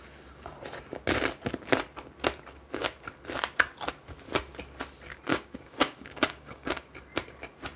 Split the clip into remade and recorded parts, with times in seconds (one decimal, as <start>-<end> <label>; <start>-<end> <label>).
0.0-5.3 recorded; 5.3-6.7 remade; 6.7-7.8 recorded